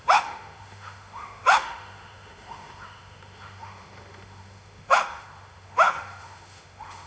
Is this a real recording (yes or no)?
no